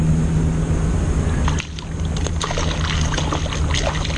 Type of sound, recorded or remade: recorded